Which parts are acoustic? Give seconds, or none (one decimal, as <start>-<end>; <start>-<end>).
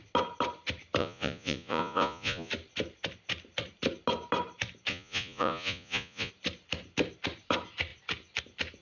0.0-1.0; 2.5-4.9; 6.3-8.8